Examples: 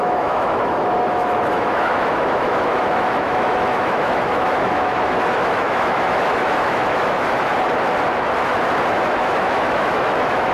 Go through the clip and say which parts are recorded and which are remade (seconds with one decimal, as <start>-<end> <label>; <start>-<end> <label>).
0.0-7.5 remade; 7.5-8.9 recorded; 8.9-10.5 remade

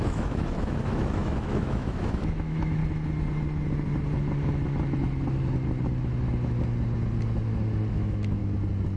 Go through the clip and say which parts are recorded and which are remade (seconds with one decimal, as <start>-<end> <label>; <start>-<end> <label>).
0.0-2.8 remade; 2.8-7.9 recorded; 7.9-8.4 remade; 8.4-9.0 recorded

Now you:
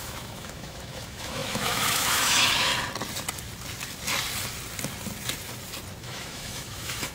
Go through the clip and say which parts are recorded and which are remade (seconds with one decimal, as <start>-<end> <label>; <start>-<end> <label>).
0.0-2.7 remade; 2.7-6.0 recorded; 6.0-7.1 remade

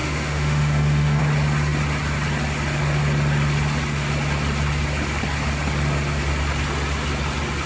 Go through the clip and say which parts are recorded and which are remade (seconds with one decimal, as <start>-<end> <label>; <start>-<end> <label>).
0.0-1.2 remade; 1.2-7.7 recorded

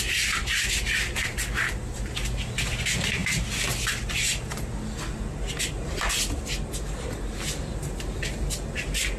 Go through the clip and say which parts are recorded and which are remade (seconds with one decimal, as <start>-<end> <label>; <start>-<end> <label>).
0.0-9.2 recorded